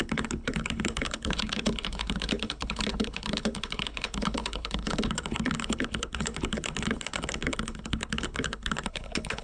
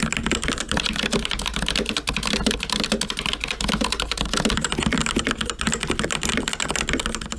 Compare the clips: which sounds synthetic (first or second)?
first